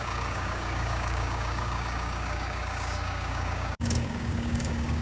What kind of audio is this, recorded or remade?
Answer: remade